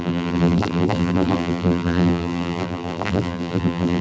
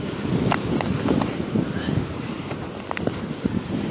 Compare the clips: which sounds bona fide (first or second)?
second